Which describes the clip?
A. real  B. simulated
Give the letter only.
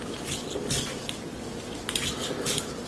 A